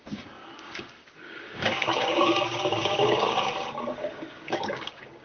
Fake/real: fake